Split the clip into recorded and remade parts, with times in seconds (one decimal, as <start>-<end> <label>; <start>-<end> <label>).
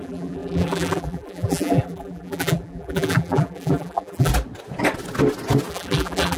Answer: 0.0-4.3 remade; 4.3-5.7 recorded; 5.7-6.4 remade